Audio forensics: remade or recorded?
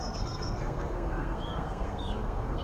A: remade